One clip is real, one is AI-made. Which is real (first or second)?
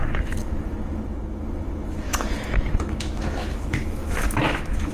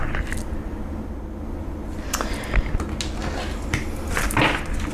second